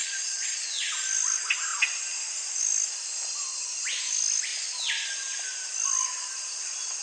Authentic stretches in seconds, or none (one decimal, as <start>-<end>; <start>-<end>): 0.9-7.0